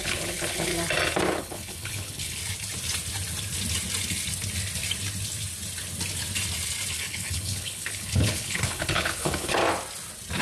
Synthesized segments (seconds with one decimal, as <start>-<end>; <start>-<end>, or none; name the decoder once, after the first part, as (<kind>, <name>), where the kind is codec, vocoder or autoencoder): 0.0-0.7 (codec, HILCodec); 1.4-2.4; 6.9-9.6